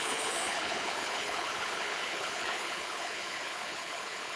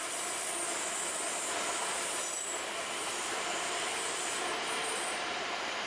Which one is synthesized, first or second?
first